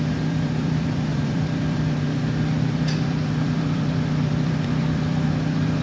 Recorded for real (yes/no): no